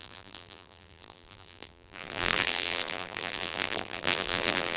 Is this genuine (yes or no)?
no